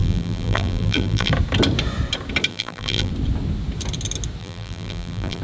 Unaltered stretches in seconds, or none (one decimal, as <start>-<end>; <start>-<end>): 1.3-2.5; 3.1-4.4